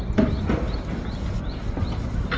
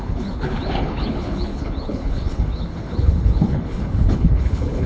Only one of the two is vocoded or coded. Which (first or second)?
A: second